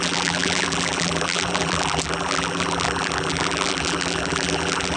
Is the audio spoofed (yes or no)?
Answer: yes